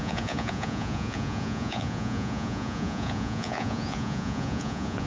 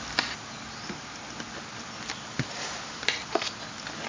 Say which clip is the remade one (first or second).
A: first